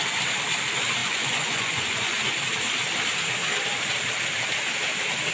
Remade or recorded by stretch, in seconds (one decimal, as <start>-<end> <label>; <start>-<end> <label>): 0.0-1.0 recorded; 1.0-2.3 remade; 2.3-5.3 recorded